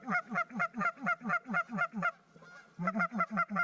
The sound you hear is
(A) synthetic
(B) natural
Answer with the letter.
B